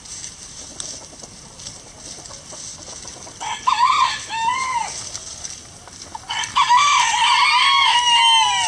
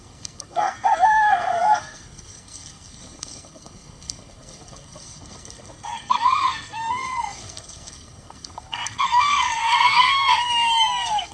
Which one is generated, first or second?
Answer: second